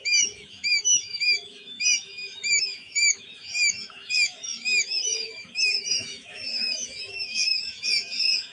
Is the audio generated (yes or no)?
yes